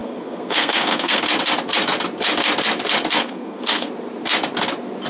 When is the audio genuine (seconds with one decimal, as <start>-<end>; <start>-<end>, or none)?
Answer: 1.2-3.2; 3.9-5.1